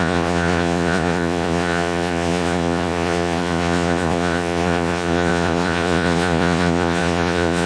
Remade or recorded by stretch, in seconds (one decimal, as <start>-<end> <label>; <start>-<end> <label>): 0.0-7.7 remade